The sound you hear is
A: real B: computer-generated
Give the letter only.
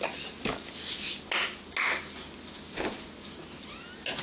A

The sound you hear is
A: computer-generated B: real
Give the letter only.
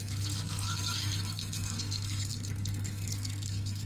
A